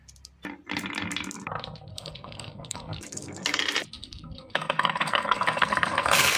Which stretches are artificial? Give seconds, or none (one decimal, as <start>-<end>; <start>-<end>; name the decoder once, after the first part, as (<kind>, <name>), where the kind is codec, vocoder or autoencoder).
1.9-3.6 (codec, SNAC); 4.0-6.4